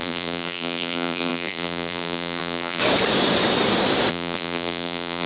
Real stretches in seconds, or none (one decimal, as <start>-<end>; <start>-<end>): 2.8-4.1